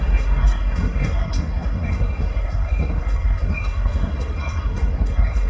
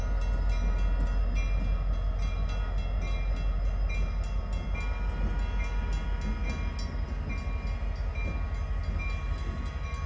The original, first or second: second